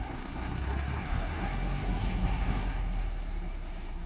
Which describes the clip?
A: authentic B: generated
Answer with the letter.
B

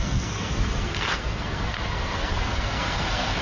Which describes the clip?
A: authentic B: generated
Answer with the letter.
B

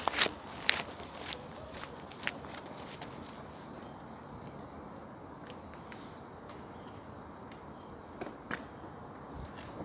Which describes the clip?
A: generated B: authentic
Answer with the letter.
B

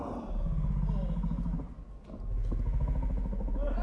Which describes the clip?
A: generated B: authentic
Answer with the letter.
B